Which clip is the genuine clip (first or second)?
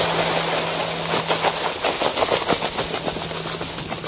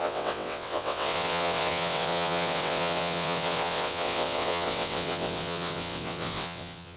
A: first